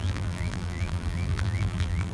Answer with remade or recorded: remade